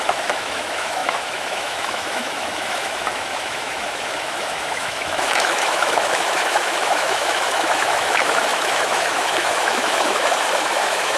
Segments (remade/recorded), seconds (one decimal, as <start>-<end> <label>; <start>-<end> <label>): 0.0-11.2 remade